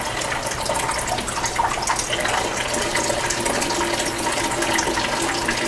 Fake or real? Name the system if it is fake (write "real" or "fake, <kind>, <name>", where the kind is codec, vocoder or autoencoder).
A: real